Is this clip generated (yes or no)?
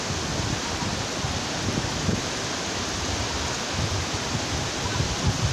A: no